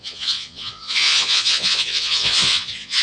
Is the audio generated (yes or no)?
yes